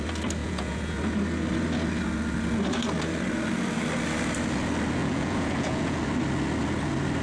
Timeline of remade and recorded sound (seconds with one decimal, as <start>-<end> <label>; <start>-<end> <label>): 0.0-0.4 recorded; 0.4-1.0 remade; 1.0-5.0 recorded; 5.0-6.0 remade; 6.0-7.2 recorded